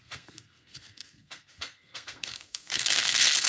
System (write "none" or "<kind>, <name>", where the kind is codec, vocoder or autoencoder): codec, SNAC